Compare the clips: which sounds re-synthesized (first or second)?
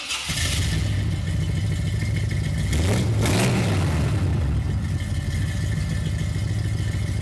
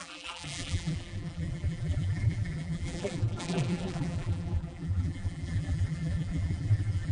second